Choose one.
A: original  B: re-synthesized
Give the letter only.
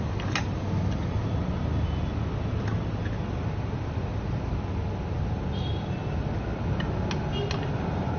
A